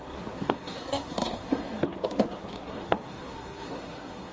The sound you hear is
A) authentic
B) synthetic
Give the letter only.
B